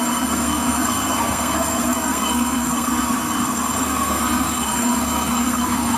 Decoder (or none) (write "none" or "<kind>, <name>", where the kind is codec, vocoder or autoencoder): codec, SNAC